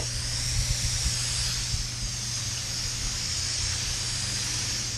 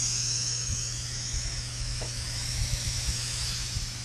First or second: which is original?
first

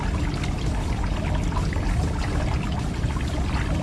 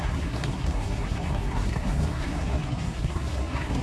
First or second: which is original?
first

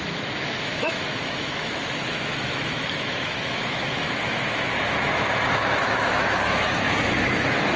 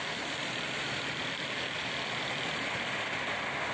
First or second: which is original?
second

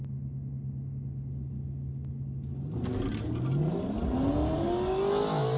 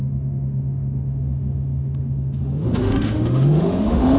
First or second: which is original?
first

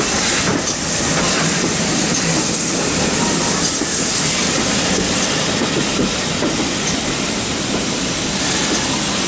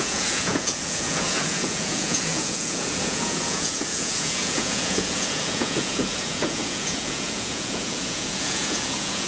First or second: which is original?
first